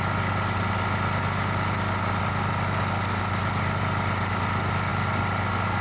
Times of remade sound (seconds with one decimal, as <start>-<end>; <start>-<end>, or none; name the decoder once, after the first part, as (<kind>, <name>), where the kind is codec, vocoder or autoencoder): none